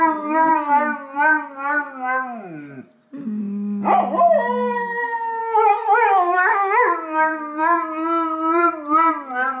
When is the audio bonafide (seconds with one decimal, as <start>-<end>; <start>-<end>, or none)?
0.0-5.4; 7.0-9.6